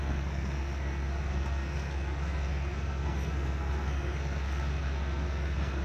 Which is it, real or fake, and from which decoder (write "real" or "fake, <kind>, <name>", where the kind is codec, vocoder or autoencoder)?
fake, codec, SNAC